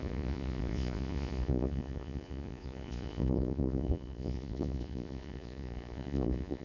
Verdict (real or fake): fake